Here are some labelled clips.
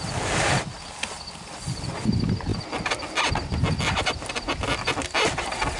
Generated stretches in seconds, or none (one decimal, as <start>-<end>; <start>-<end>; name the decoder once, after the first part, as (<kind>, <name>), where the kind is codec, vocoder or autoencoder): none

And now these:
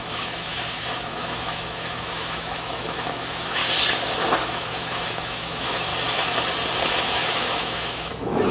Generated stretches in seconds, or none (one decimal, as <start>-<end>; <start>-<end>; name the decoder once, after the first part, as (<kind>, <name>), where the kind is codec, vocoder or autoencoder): 0.0-3.6 (autoencoder, DAC-VAE); 4.5-5.9; 7.0-8.5

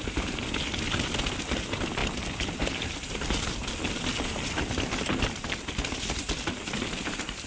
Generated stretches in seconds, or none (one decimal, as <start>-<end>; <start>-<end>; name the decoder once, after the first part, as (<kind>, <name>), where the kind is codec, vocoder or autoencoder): none

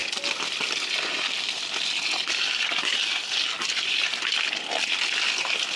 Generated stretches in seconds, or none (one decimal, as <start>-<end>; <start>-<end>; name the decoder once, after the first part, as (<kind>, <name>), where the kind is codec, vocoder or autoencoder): none